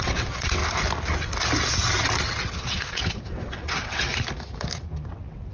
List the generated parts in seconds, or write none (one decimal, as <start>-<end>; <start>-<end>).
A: 0.0-0.6; 2.6-4.1; 5.1-5.5